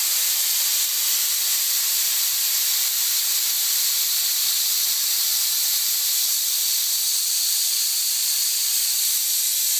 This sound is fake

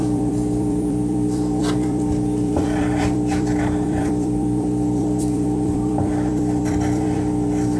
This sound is fake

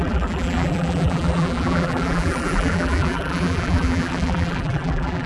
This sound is fake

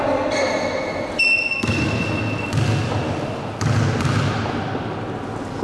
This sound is real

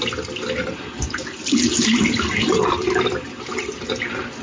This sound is fake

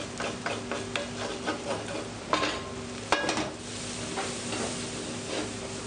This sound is real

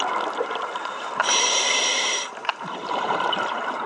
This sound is fake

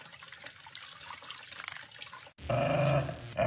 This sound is real